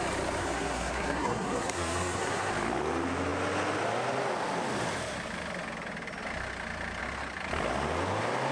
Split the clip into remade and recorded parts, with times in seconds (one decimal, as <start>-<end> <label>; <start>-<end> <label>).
0.0-0.4 recorded; 0.4-2.5 remade; 2.5-8.5 recorded